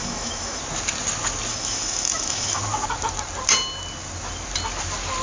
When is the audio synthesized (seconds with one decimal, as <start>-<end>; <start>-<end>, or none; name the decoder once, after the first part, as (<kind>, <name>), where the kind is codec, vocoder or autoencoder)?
0.0-0.6 (autoencoder, DAC-VAE); 1.5-2.6